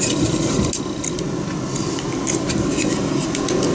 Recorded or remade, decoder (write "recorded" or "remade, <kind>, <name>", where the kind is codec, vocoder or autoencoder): recorded